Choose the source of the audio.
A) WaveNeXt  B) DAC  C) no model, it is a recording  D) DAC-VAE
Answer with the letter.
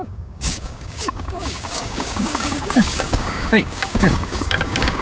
B